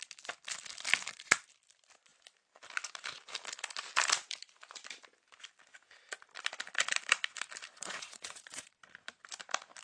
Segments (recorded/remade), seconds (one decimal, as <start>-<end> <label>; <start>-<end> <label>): 0.0-7.7 recorded; 7.7-8.8 remade; 8.8-9.8 recorded